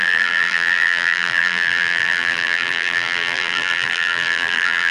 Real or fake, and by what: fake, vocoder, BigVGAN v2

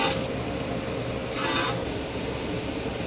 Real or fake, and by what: real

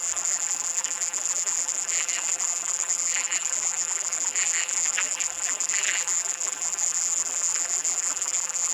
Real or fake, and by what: fake, vocoder, BigVGAN v2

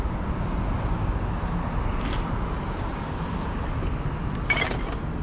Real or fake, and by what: real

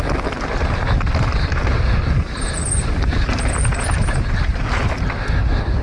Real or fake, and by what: real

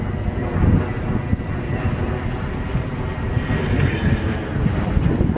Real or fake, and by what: real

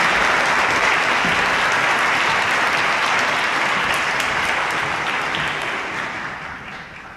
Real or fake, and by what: real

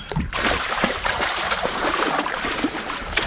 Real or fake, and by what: fake, vocoder, BigVGAN v2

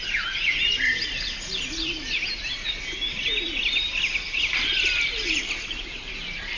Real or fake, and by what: real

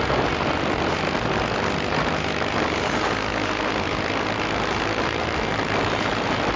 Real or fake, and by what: real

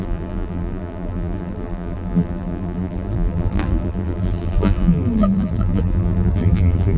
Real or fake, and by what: fake, vocoder, BigVGAN v2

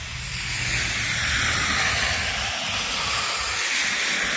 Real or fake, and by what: real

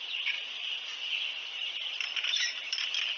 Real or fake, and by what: fake, vocoder, BigVGAN v2